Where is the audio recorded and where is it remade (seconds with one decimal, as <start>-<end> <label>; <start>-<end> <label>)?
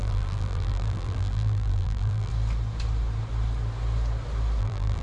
0.0-2.3 remade; 2.3-4.6 recorded; 4.6-5.0 remade